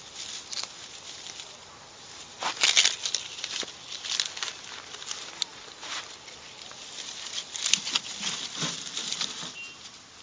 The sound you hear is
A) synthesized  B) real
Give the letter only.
B